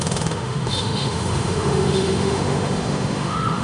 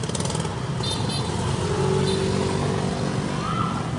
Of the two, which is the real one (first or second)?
second